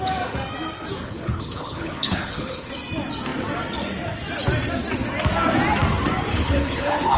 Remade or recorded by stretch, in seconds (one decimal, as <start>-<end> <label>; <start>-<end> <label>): 0.0-1.0 recorded; 1.0-2.7 remade; 2.7-6.3 recorded; 6.3-7.2 remade